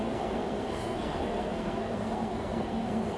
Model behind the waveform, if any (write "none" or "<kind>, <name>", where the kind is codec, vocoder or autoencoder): codec, SNAC